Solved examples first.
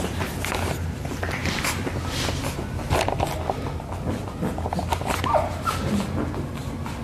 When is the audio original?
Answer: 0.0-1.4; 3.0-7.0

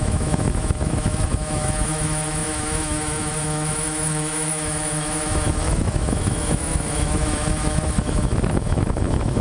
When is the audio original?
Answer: none

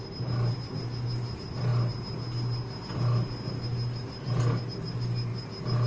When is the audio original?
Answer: 0.0-5.9

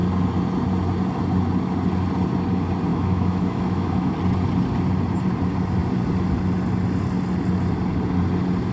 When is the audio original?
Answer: 0.0-2.9; 4.1-8.7

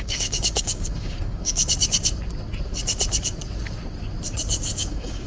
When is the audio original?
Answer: 1.6-4.8

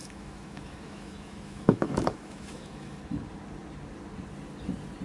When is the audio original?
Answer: 3.0-5.0

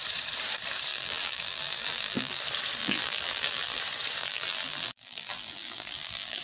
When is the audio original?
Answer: 0.0-0.9; 2.4-2.8; 3.8-4.2

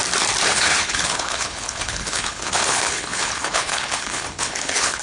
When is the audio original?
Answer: 0.0-0.5